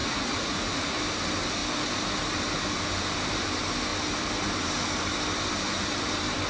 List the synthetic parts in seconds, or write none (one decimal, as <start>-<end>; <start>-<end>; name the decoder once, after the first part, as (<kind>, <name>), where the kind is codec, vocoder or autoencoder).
0.0-1.0 (vocoder, Vocos)